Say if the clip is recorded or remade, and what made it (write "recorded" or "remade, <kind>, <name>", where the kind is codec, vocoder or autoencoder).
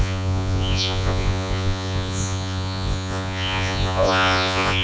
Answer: remade, vocoder, Vocos